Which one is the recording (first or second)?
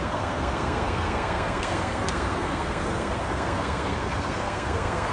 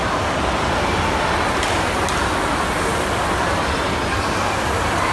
second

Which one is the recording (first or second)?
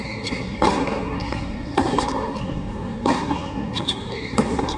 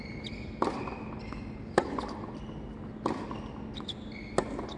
second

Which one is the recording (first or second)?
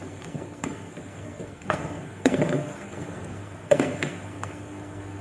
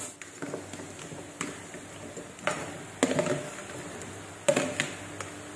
second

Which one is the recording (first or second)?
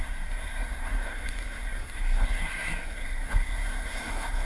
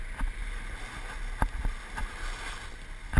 second